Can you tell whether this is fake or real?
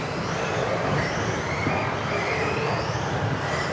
real